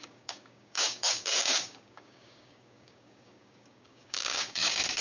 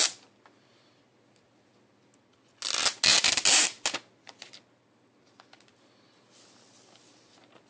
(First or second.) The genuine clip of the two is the second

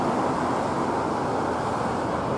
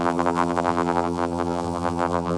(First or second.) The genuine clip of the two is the first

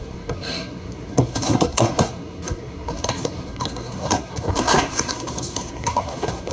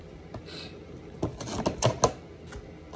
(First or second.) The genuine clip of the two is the second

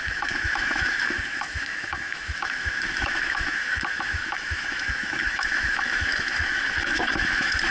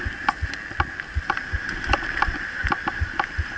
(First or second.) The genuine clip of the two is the second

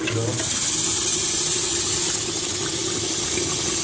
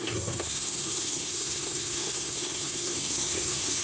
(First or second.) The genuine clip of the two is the first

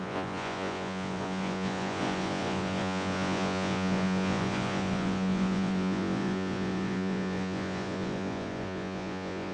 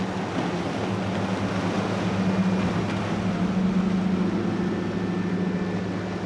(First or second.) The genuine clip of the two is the second